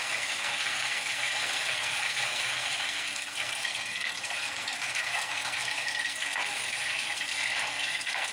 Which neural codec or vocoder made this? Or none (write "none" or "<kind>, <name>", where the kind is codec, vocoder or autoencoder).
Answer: codec, SNAC